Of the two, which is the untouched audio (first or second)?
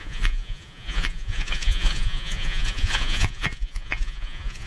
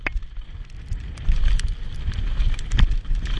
second